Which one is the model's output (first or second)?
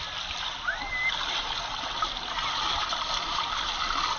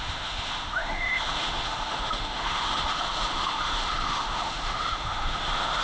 second